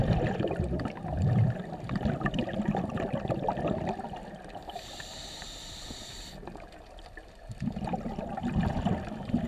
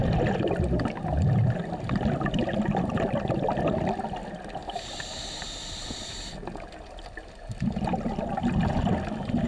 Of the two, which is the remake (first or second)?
first